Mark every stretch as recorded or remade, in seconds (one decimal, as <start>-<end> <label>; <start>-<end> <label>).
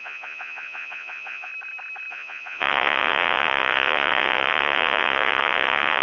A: 0.0-1.5 remade; 1.5-2.1 recorded; 2.1-6.0 remade